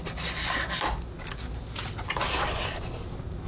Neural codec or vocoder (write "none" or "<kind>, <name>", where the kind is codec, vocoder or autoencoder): none